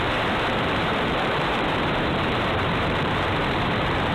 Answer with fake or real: fake